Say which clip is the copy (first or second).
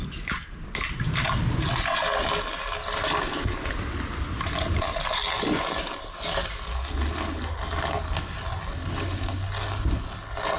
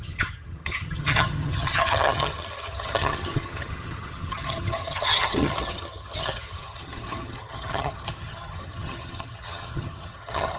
second